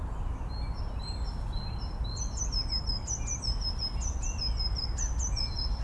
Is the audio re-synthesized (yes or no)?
no